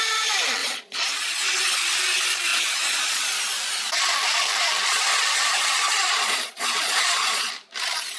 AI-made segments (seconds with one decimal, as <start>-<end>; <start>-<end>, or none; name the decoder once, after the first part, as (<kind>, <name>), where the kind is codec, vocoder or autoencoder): 0.6-1.6 (vocoder, Vocos); 2.5-3.4; 4.8-7.5

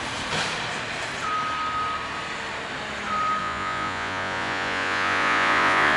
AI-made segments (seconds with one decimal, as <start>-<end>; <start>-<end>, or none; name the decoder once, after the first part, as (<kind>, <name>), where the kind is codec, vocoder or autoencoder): 3.4-6.0 (vocoder, Vocos)

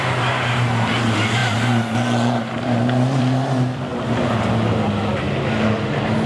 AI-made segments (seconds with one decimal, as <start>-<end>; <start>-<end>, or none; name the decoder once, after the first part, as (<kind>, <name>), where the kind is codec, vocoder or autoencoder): none